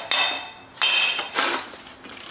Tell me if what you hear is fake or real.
real